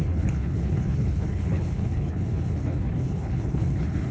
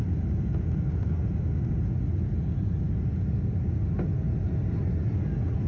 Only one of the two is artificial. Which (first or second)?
first